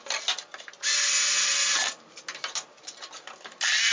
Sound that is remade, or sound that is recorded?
recorded